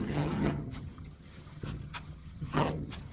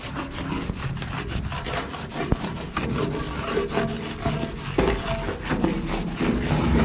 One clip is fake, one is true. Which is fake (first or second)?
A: first